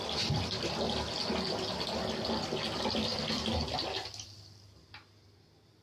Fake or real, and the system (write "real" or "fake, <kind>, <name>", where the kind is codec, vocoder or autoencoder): real